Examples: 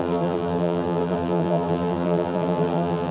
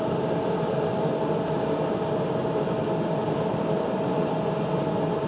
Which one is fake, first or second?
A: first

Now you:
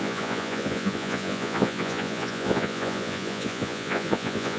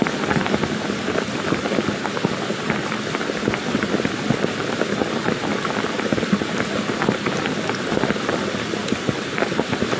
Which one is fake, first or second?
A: first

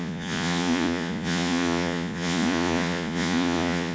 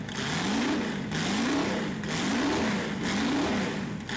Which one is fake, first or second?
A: first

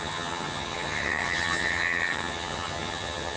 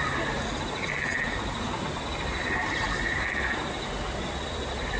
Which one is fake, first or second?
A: first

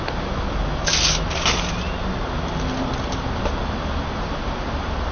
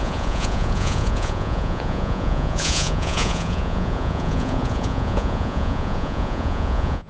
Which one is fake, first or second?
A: second